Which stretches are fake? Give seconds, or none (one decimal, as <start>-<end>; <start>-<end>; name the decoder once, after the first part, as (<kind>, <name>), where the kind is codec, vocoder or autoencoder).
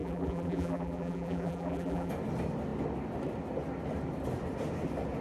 0.0-2.1 (vocoder, BigVGAN v2)